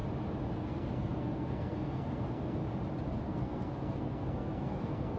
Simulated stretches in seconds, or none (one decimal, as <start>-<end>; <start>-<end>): 0.5-2.6; 3.2-5.2